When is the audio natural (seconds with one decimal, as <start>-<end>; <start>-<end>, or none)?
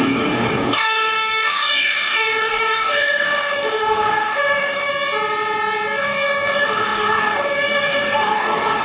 4.9-6.0